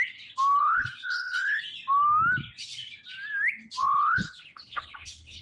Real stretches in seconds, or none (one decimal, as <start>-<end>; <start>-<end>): 0.0-0.6; 1.6-3.8